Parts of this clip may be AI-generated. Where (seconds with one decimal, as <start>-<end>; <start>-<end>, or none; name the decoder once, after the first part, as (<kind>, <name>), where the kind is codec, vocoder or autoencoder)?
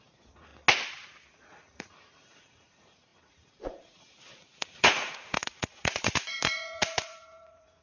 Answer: 0.0-0.5 (vocoder, Vocos); 1.3-7.8